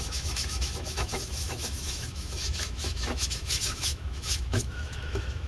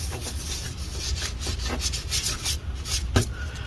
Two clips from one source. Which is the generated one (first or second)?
first